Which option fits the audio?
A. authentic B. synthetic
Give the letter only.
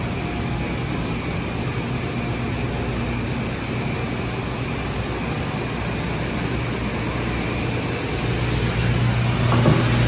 A